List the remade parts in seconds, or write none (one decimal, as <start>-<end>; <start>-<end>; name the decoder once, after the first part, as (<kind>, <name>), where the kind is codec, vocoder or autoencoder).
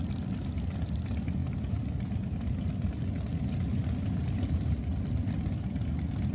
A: none